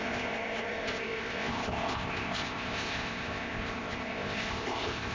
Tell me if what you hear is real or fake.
fake